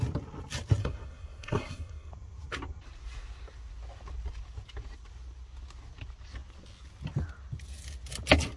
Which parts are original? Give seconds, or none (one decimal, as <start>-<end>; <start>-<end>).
0.0-0.8; 2.1-8.6